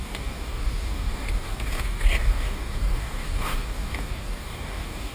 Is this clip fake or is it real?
fake